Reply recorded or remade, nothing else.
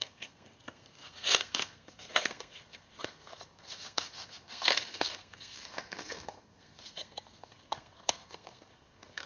remade